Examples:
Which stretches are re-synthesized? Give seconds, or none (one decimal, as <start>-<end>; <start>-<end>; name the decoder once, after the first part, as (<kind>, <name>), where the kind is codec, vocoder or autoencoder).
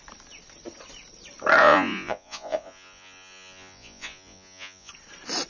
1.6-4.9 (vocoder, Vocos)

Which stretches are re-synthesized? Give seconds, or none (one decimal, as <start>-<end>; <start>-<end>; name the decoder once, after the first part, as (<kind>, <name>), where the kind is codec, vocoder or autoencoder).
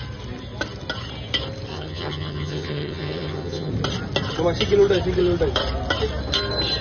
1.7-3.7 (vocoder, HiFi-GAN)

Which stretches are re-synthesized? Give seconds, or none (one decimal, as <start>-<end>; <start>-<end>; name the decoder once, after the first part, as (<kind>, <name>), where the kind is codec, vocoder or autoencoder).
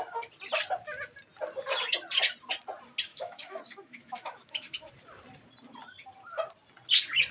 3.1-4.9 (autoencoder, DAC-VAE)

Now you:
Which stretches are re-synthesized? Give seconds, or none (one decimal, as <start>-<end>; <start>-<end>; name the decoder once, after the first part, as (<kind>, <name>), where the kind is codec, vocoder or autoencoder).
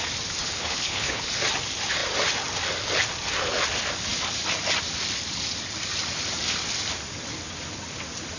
0.4-1.2 (codec, HILCodec)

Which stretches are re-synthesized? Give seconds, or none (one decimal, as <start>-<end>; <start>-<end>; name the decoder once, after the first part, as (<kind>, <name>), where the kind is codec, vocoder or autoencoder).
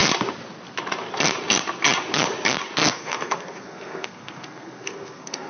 2.8-5.5 (codec, SNAC)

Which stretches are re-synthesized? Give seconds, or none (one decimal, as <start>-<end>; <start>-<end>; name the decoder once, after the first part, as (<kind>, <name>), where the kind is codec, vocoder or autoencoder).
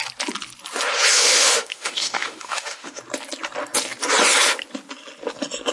1.1-3.0 (autoencoder, DAC-VAE)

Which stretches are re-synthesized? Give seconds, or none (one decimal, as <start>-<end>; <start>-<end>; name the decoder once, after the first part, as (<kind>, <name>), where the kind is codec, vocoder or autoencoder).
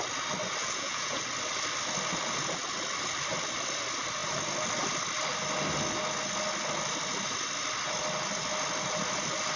0.6-1.2 (vocoder, Vocos)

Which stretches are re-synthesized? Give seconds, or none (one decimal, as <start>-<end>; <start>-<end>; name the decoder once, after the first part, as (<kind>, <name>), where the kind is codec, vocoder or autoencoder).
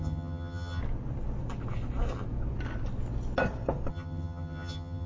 0.0-0.8 (vocoder, HiFi-GAN); 3.9-5.1